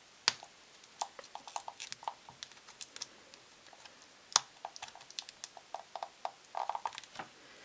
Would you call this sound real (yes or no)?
yes